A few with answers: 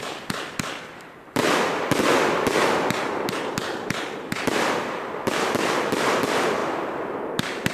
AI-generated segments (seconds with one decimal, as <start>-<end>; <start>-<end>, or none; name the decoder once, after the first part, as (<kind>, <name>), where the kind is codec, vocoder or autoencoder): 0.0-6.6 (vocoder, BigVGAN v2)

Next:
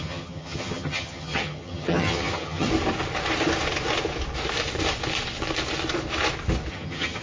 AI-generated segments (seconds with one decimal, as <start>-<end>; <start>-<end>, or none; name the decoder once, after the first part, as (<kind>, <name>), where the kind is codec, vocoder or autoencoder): 0.0-2.7 (vocoder, HiFi-GAN); 6.7-7.2

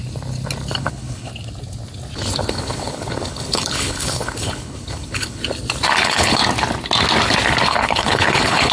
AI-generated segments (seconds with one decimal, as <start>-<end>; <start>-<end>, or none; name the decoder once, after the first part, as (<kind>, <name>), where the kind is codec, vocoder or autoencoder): 0.8-1.3 (codec, HILCodec); 2.5-5.4; 6.0-6.4; 7.7-8.7

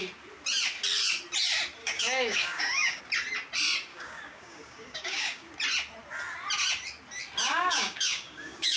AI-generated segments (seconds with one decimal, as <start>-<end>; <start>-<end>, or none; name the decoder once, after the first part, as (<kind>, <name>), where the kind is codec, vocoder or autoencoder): 1.8-3.0 (codec, DAC); 3.9-5.5; 7.4-8.8

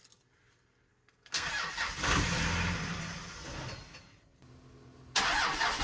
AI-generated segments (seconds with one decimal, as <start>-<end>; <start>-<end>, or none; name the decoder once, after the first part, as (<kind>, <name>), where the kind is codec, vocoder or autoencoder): 0.9-1.5 (codec, SNAC)

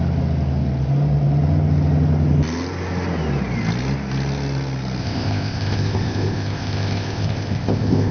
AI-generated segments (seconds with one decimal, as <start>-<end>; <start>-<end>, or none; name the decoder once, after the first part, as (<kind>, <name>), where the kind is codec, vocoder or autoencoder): 5.0-8.1 (codec, ZipCodec)